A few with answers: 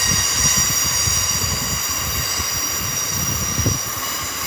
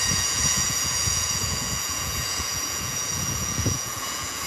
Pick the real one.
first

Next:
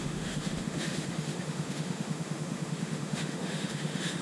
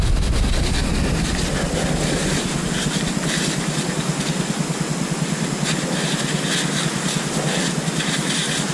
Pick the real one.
second